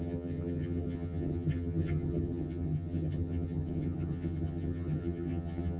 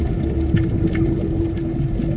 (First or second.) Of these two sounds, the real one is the second